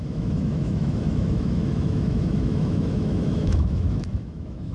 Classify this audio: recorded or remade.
remade